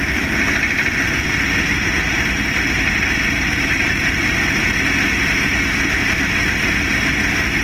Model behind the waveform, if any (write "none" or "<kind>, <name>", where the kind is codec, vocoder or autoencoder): none